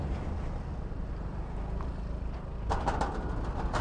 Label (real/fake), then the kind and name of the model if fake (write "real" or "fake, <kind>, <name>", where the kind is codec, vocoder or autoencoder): real